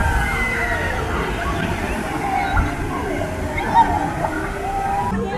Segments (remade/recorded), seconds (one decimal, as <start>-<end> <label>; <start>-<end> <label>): 0.0-5.4 recorded